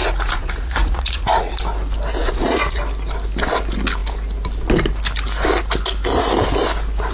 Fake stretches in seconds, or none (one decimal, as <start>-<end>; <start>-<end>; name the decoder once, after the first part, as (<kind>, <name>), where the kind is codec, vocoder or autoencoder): 0.0-1.5 (vocoder, Vocos); 2.2-2.8